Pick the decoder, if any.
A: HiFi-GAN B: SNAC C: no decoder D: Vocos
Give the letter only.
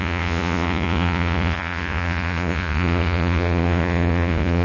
D